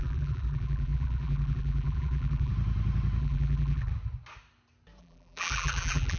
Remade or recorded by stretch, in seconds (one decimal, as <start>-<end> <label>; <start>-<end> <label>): 0.0-2.5 remade; 2.5-3.2 recorded; 3.2-3.9 remade; 3.9-5.0 recorded; 5.0-6.2 remade